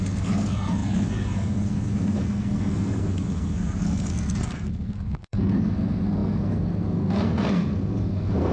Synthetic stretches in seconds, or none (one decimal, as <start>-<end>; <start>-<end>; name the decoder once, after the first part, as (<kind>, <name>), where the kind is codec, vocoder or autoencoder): 0.0-8.5 (codec, SNAC)